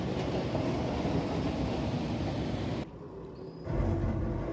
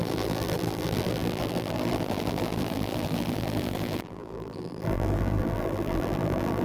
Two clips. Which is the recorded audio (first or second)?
first